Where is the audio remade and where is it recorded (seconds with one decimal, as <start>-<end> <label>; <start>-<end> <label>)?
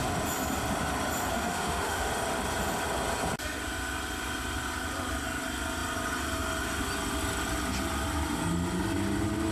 0.0-1.3 recorded; 1.3-2.1 remade; 2.1-9.5 recorded